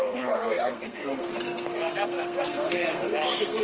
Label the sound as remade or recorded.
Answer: remade